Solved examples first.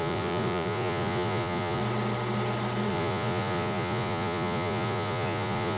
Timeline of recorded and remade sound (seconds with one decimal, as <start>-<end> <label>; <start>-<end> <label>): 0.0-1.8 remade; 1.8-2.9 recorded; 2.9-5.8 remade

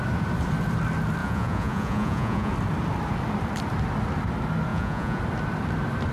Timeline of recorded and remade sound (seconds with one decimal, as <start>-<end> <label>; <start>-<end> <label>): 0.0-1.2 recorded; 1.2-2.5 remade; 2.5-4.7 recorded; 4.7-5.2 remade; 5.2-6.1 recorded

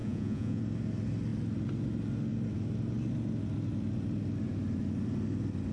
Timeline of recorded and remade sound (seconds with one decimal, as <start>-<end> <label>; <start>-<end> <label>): 0.0-0.6 remade; 0.6-5.7 recorded

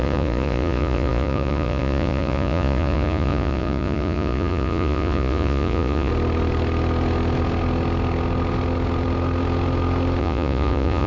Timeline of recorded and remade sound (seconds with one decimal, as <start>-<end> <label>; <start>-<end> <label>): 0.0-6.1 remade; 6.1-10.2 recorded; 10.2-11.1 remade

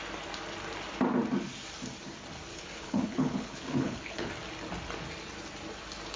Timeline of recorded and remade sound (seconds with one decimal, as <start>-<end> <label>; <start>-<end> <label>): 0.0-2.5 recorded; 2.5-4.3 remade; 4.3-6.2 recorded

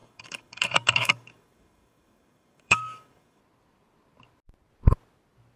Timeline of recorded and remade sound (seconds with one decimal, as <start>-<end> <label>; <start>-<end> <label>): 0.0-3.4 remade; 3.4-5.6 recorded